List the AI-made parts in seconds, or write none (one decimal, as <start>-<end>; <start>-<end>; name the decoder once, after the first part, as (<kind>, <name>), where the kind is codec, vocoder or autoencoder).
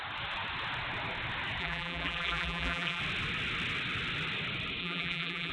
1.6-3.0 (vocoder, BigVGAN v2); 4.8-5.5